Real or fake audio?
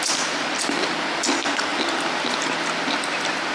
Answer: real